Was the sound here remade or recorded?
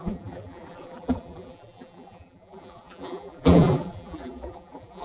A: remade